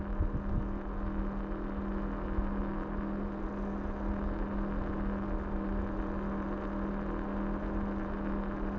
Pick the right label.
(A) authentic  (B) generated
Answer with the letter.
A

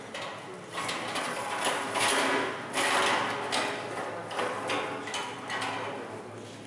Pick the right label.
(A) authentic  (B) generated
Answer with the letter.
A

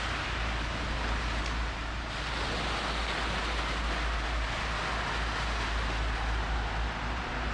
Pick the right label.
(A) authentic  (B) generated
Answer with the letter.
A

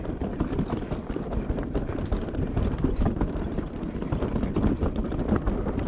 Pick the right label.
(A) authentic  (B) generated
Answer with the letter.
B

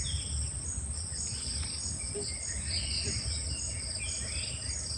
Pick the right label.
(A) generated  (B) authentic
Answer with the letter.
B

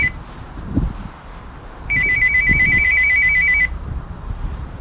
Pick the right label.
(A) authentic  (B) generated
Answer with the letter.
B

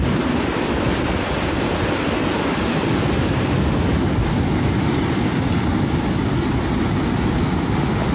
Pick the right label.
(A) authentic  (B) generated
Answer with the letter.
A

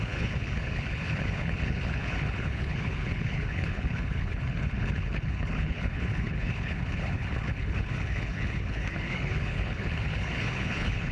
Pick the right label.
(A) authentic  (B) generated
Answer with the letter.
B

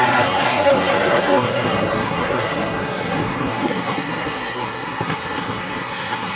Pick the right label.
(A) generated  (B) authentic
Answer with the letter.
A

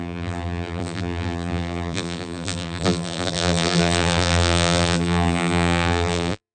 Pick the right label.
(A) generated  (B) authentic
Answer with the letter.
A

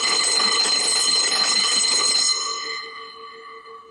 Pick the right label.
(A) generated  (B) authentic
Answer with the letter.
A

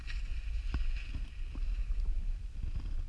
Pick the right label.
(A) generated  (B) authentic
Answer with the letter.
B